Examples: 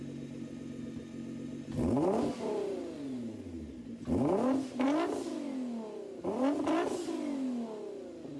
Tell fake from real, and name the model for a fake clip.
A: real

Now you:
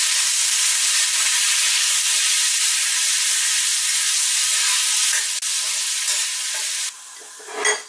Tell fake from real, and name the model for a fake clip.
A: real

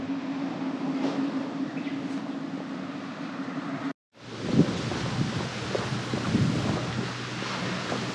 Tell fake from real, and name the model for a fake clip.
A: real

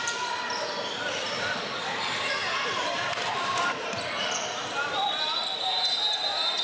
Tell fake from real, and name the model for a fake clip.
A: fake, vocoder, BigVGAN v2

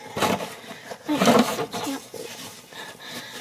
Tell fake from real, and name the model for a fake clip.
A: fake, vocoder, BigVGAN v2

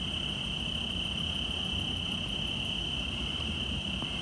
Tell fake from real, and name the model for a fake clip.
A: real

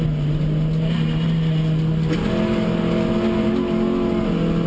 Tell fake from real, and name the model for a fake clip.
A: real